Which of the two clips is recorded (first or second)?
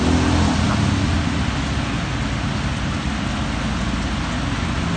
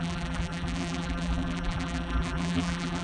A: first